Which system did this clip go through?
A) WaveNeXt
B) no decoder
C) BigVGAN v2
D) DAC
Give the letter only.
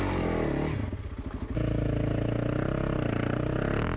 B